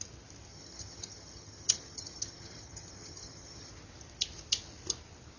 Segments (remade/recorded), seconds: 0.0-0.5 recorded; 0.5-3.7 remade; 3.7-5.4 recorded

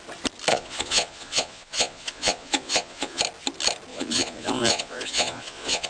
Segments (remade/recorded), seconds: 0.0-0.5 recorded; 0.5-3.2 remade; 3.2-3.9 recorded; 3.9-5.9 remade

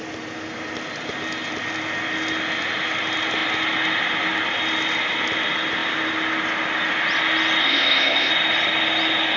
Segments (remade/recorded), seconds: 0.0-7.6 recorded; 7.6-8.3 remade; 8.3-9.4 recorded